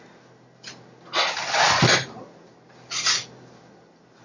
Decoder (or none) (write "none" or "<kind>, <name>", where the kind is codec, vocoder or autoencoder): none